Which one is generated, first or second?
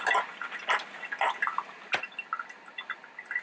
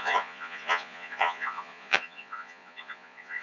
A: second